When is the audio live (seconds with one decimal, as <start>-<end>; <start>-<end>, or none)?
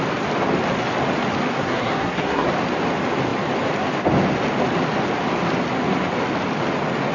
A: 0.0-1.5; 2.5-7.1